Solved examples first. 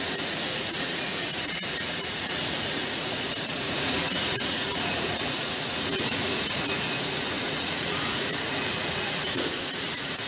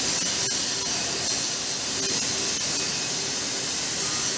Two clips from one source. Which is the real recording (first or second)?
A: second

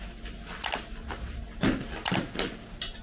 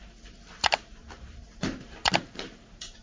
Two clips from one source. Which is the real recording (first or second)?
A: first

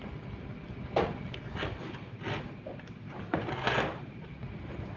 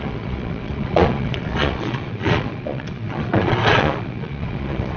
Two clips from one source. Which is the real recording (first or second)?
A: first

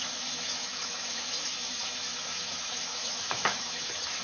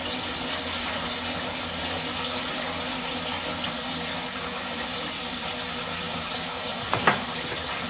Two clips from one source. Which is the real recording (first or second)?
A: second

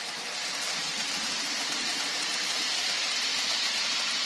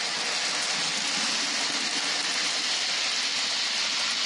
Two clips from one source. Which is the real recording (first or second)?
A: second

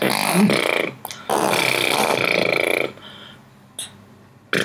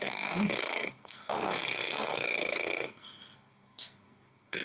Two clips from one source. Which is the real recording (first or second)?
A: first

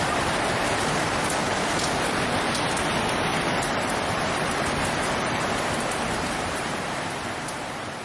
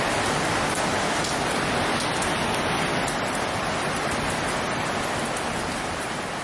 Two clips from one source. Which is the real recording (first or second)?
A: second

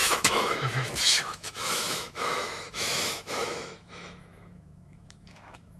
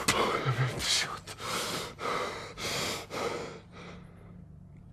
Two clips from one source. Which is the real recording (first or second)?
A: second